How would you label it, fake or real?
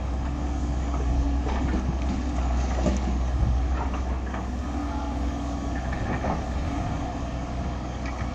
fake